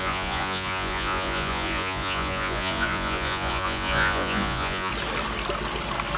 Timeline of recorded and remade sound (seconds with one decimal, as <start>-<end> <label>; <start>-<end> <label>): 0.0-4.9 remade; 4.9-6.2 recorded